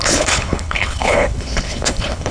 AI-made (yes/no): yes